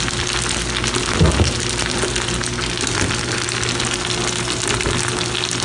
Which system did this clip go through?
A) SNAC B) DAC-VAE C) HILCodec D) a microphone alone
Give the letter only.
D